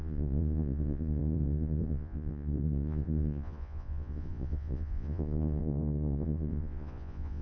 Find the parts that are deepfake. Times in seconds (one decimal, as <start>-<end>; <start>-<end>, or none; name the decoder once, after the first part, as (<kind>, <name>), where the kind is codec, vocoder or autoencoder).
0.0-7.4 (vocoder, Vocos)